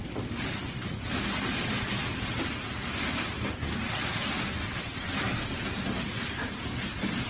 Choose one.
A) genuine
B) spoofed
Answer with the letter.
A